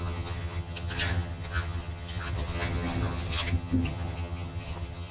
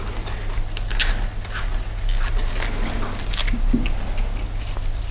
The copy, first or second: first